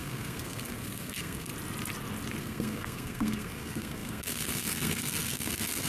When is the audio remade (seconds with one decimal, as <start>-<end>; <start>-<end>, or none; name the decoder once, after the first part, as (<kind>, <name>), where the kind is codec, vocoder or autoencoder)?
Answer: 0.0-1.5 (codec, SNAC); 2.4-5.9